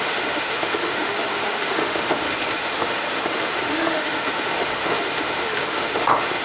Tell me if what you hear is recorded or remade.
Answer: remade